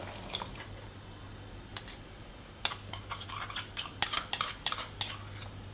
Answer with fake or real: real